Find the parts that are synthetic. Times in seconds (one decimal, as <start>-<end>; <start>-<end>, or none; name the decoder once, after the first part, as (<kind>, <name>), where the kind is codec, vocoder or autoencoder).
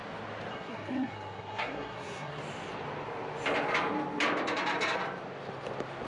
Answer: 0.5-2.4 (codec, SNAC)